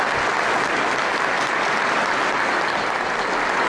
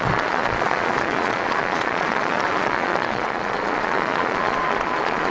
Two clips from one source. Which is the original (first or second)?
first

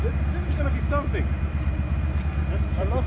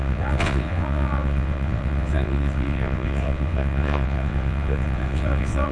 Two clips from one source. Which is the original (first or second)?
first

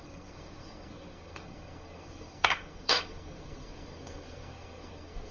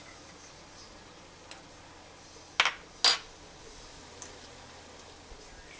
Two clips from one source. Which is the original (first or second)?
second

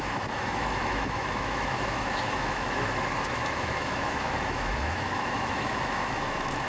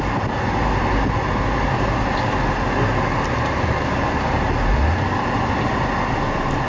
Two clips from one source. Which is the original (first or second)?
second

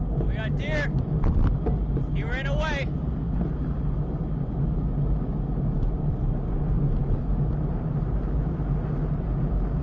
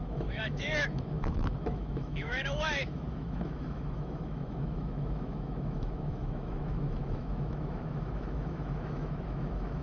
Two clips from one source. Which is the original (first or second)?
first